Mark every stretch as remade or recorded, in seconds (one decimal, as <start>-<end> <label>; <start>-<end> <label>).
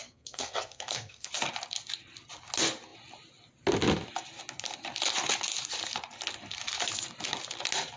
0.0-1.3 remade; 1.3-8.0 recorded